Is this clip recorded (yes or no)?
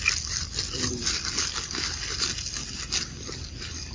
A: yes